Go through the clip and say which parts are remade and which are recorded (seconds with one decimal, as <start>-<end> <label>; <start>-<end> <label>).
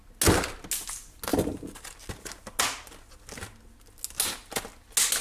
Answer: 0.0-5.2 recorded